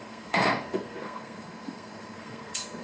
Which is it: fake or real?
fake